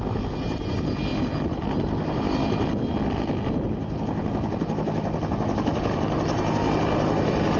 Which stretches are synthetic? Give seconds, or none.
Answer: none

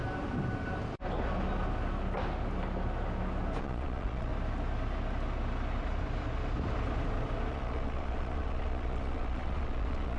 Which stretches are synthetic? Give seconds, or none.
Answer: 3.6-4.3 (vocoder, Vocos); 7.5-10.2

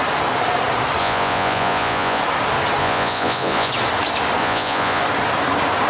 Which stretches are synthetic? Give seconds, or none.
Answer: 1.0-2.2 (vocoder, Vocos); 2.8-3.7; 4.4-5.0

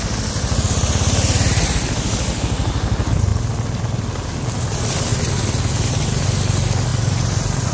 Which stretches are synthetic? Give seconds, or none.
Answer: 0.0-3.3 (vocoder, BigVGAN v2); 4.6-5.1; 5.7-6.9

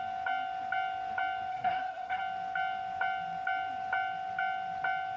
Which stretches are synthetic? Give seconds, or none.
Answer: 1.5-2.2 (codec, SNAC)

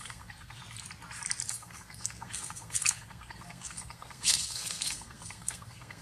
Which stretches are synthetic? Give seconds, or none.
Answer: 0.0-0.6 (codec, SNAC); 1.5-6.0